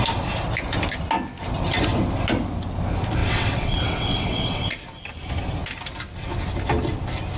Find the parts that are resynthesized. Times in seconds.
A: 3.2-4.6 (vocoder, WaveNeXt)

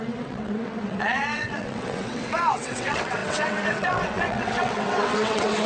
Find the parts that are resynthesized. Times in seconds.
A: 0.0-5.7 (vocoder, WaveNeXt)

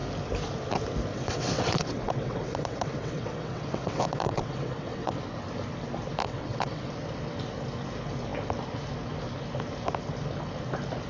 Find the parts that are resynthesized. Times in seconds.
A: 1.1-5.2 (vocoder, WaveNeXt); 6.2-6.9

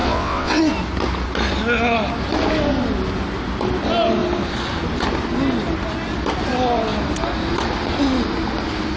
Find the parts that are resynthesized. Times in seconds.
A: 0.0-0.6 (vocoder, WaveNeXt)